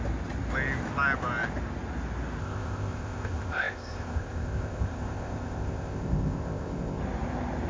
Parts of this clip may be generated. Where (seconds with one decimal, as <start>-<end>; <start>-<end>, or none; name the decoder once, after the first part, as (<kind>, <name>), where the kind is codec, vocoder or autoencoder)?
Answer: 2.4-7.0 (codec, ZipCodec)